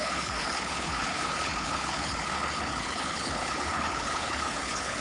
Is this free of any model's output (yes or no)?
no